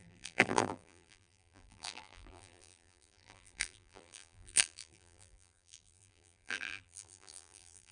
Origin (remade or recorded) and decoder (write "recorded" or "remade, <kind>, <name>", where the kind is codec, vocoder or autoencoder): remade, vocoder, BigVGAN v2